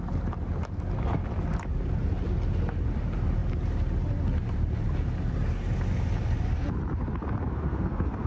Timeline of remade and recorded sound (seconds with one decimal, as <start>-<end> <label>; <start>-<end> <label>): 0.0-7.5 recorded; 7.5-8.3 remade